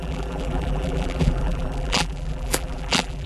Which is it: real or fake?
fake